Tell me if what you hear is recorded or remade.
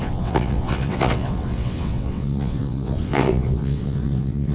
remade